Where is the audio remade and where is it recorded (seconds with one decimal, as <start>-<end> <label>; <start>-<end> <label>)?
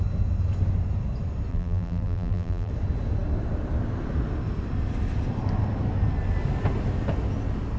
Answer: 0.0-1.5 recorded; 1.5-2.7 remade; 2.7-7.8 recorded